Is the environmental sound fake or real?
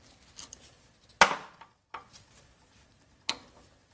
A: real